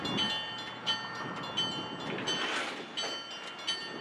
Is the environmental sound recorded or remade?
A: recorded